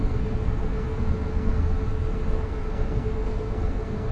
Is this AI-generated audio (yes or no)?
yes